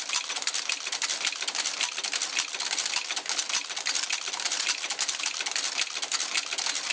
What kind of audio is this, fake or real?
real